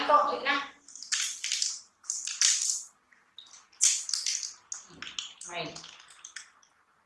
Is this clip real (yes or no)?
yes